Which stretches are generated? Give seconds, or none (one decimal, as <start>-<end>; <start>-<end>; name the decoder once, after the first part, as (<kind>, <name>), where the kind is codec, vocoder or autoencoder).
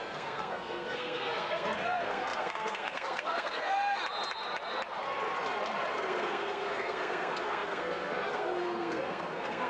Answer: 0.0-4.0 (codec, SNAC); 5.9-9.7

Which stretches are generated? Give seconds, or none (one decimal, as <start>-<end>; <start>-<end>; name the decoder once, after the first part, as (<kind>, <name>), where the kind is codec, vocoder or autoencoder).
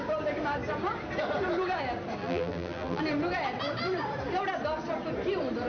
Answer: 2.2-3.0 (vocoder, BigVGAN v2)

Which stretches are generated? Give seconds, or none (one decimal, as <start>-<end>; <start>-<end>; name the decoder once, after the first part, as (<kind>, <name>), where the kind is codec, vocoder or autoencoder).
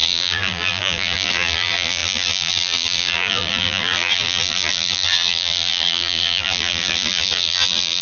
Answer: 0.0-8.0 (vocoder, BigVGAN v2)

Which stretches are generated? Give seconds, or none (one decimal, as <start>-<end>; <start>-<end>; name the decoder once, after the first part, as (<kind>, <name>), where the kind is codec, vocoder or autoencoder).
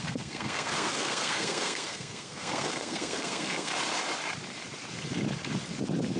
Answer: 0.0-3.7 (codec, SNAC)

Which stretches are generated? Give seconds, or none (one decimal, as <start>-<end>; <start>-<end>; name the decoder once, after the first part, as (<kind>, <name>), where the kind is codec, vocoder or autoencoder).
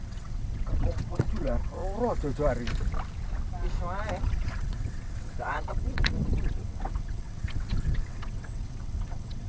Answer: 0.0-1.8 (vocoder, WaveNeXt); 4.2-9.5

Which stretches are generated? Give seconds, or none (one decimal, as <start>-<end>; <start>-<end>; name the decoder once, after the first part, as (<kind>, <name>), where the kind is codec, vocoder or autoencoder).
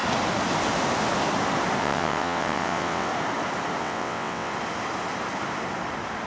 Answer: 1.8-3.1 (vocoder, WaveNeXt); 3.8-4.5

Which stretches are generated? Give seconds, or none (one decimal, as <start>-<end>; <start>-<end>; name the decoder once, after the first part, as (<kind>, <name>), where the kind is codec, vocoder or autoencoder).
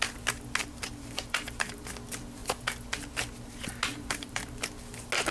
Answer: 0.6-1.8 (vocoder, BigVGAN v2); 3.9-4.6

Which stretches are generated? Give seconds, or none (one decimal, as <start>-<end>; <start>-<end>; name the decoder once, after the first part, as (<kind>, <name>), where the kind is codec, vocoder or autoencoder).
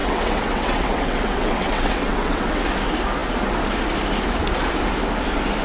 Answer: 0.0-2.6 (vocoder, WaveNeXt)